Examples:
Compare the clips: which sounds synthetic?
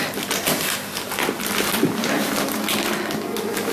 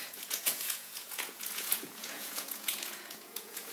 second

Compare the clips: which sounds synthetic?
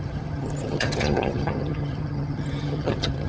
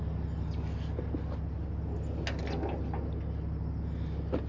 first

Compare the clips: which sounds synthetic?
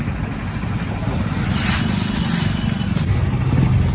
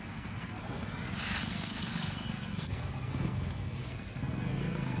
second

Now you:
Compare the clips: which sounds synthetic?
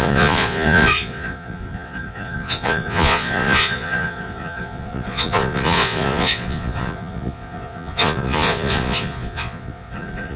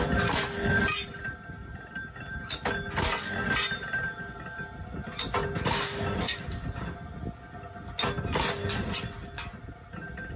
first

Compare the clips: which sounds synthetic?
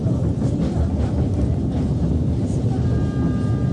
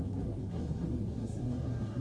second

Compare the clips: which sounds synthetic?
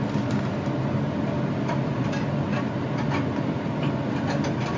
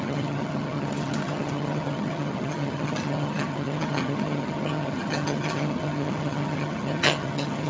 second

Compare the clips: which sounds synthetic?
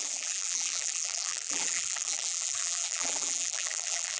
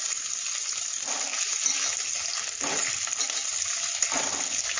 first